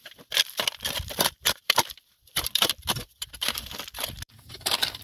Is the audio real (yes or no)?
no